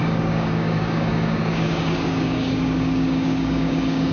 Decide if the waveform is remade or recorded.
remade